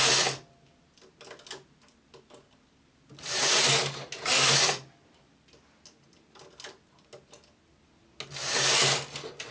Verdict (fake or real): real